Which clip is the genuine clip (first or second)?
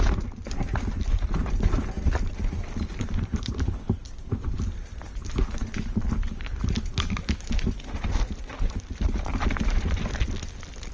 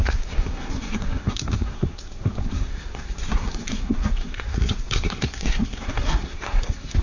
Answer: first